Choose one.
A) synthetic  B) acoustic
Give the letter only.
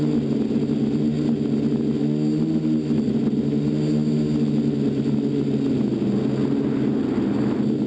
B